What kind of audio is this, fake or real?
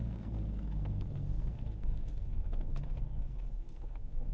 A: fake